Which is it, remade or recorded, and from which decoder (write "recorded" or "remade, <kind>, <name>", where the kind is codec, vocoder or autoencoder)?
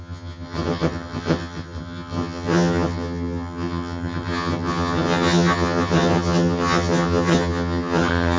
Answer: remade, vocoder, HiFi-GAN